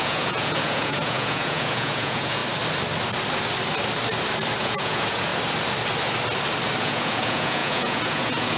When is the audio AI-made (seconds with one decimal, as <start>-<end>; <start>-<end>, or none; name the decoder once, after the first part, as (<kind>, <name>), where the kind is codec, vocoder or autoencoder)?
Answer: 0.0-2.4 (vocoder, Vocos); 4.6-5.3; 6.8-8.6